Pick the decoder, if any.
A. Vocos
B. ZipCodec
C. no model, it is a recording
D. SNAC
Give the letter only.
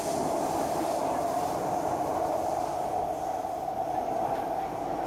C